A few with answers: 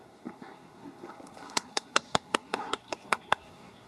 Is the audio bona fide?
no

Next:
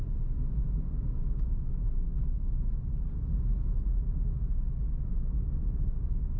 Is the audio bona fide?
yes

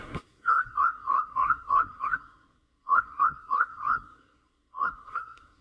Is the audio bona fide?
no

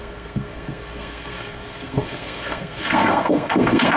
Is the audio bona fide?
no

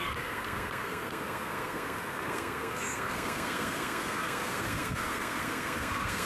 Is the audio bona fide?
no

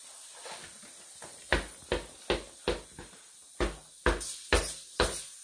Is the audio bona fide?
yes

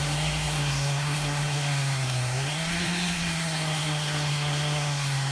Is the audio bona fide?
no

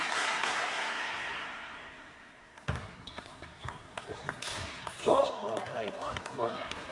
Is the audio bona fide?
no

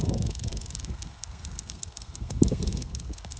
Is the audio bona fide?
no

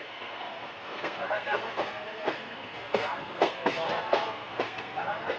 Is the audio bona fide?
no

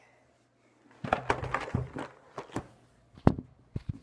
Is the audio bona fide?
yes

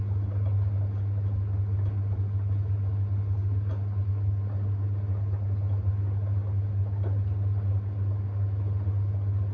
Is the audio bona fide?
yes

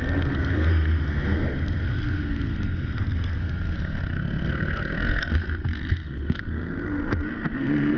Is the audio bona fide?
no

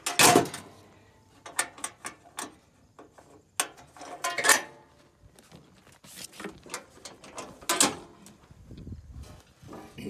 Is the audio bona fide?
yes